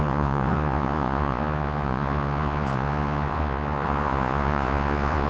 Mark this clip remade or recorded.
remade